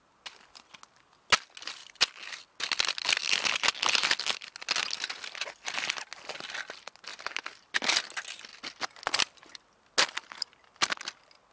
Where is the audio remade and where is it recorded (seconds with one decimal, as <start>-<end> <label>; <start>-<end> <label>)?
0.0-11.5 recorded